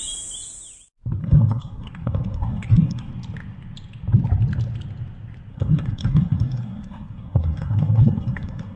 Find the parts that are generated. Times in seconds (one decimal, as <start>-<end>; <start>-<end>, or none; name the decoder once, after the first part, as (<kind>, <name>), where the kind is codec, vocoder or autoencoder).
1.2-3.1 (codec, SNAC); 5.5-8.8